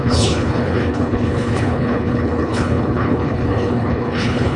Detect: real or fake fake